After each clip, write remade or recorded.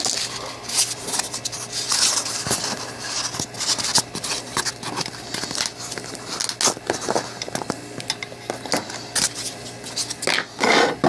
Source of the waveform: recorded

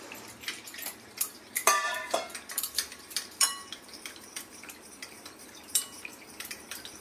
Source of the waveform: remade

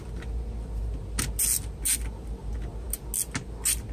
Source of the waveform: recorded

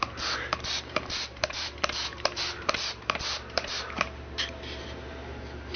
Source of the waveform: remade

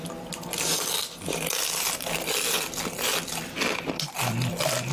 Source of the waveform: recorded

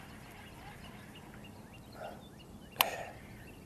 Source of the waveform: recorded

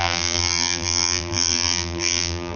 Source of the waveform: remade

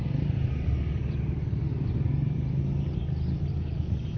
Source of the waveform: recorded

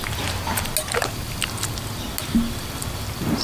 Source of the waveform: recorded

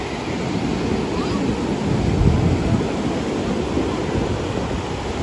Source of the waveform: recorded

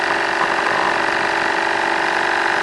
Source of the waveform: recorded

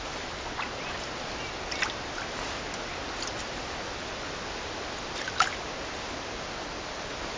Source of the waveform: recorded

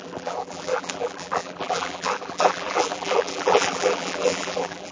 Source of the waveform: remade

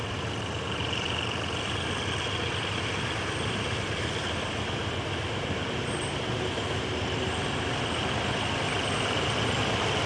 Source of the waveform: recorded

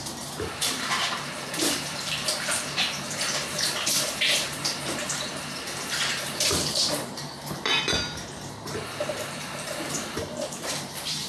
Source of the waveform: remade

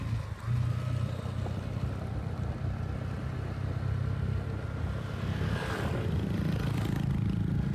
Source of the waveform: recorded